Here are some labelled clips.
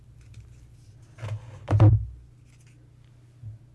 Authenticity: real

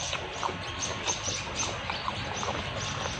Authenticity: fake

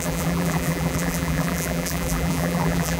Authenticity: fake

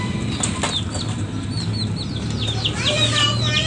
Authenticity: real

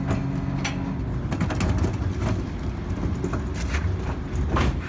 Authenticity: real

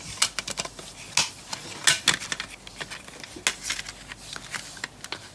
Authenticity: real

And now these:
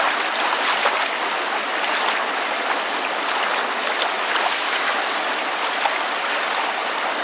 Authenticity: real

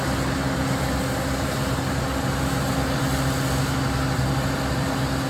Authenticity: real